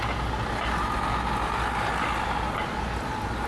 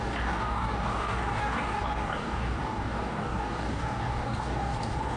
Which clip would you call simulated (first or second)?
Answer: second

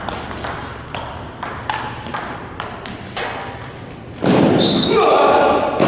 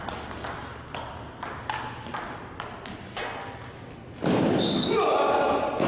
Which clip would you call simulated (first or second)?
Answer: first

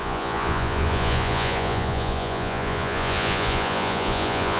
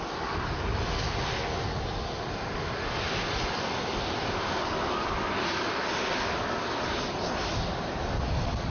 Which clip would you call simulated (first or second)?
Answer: first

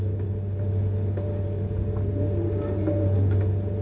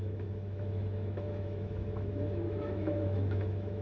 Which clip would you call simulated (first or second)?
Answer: second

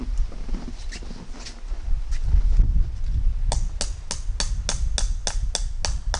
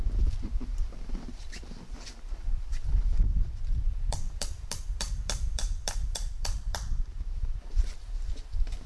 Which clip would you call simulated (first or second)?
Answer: second